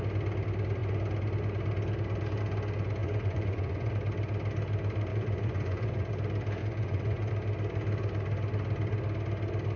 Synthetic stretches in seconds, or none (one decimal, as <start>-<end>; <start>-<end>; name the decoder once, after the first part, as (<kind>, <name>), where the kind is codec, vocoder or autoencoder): 3.0-3.9 (vocoder, Vocos); 5.1-6.1; 6.6-7.3